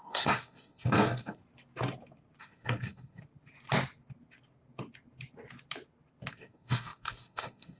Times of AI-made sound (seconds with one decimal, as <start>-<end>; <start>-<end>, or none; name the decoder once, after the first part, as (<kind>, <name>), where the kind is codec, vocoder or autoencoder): 0.0-1.4 (codec, SNAC); 2.4-3.2; 6.3-7.8